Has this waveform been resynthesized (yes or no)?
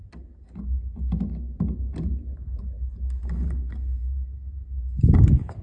no